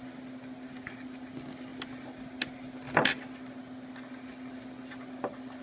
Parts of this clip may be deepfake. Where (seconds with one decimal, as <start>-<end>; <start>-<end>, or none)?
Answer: none